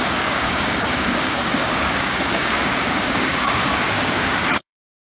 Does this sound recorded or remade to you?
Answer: remade